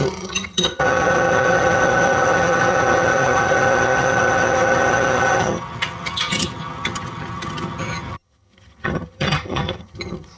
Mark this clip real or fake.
fake